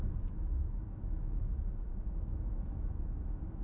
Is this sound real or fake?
fake